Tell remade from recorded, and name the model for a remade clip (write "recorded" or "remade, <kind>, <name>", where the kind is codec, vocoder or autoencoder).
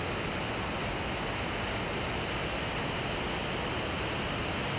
recorded